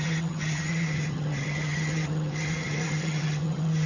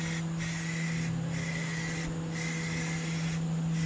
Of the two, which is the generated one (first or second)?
first